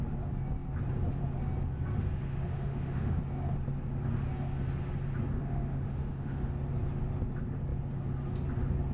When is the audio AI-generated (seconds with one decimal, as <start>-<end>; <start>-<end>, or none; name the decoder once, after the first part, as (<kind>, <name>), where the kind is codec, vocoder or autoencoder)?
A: 2.5-3.2 (autoencoder, DAC-VAE); 5.4-6.5

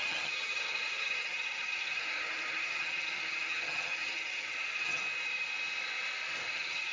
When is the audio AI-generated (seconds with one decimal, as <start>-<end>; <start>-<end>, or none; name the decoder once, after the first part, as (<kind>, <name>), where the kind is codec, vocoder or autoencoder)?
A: 0.0-5.0 (vocoder, HiFi-GAN); 6.5-6.9

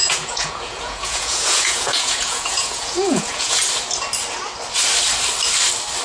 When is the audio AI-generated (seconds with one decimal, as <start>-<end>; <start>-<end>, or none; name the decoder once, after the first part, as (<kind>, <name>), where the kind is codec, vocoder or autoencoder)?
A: 0.0-3.6 (vocoder, Vocos)